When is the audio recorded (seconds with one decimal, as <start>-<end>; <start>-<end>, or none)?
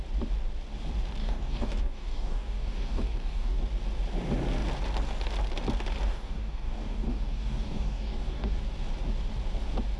0.0-1.2; 3.6-6.1; 8.6-10.0